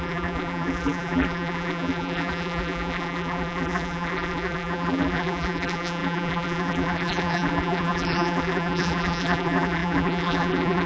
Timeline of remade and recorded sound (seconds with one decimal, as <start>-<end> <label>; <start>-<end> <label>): 0.0-10.9 remade